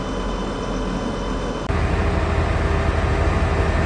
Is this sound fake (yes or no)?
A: no